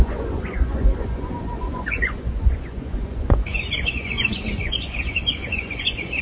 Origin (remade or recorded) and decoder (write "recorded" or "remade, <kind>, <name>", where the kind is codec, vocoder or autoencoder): remade, vocoder, Vocos